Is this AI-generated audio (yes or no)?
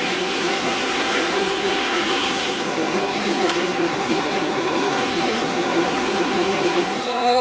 yes